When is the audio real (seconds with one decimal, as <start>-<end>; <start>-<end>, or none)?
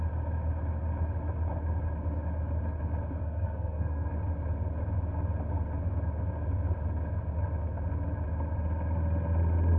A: 0.0-3.2; 4.1-9.8